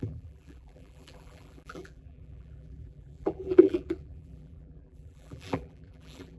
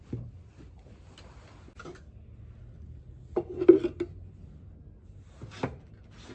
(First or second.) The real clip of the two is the second